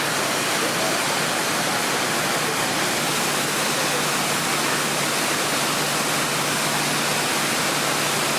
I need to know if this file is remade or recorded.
recorded